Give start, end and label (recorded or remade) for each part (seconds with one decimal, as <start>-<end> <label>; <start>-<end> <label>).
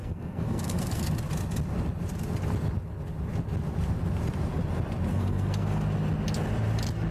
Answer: 0.0-1.0 remade; 1.0-5.1 recorded; 5.1-5.8 remade; 5.8-7.1 recorded